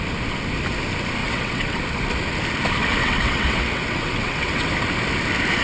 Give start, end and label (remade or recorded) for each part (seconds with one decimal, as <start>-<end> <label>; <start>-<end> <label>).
0.0-1.2 recorded; 1.2-1.8 remade; 1.8-3.0 recorded; 3.0-4.7 remade; 4.7-5.6 recorded